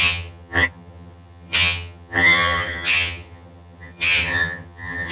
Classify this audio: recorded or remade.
remade